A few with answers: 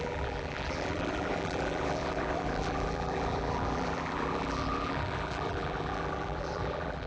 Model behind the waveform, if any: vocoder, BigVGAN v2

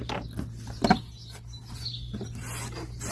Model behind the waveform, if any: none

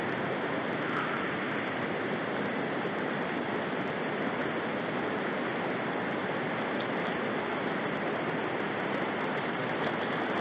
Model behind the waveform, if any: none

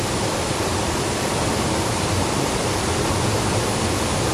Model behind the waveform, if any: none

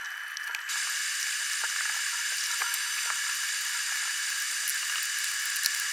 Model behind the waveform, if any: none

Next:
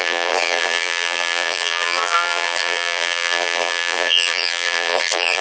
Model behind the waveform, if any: vocoder, BigVGAN v2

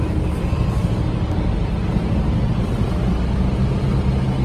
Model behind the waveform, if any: none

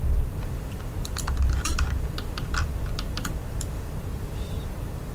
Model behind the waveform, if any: vocoder, BigVGAN v2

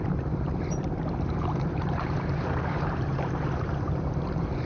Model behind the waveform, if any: vocoder, BigVGAN v2